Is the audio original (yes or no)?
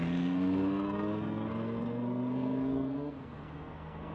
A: no